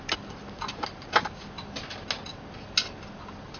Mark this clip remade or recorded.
recorded